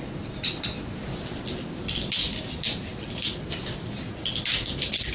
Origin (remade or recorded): recorded